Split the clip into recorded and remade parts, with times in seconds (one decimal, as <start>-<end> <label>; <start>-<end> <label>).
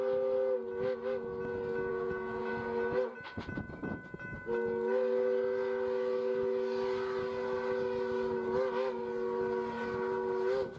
0.0-1.9 recorded; 1.9-2.5 remade; 2.5-10.8 recorded